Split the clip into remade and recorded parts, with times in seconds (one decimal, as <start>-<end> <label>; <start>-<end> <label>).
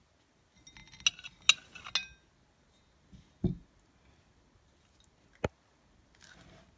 0.0-6.8 recorded